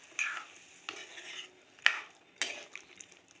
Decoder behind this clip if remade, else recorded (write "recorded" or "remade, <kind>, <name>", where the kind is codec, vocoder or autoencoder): recorded